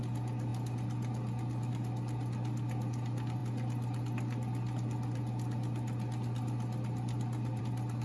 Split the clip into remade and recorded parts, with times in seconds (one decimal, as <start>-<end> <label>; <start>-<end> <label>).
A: 0.0-8.0 recorded